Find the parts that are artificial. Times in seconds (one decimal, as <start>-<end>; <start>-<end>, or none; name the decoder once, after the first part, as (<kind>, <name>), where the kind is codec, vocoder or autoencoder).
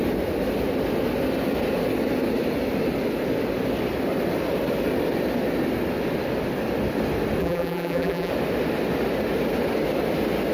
7.4-8.3 (vocoder, BigVGAN v2)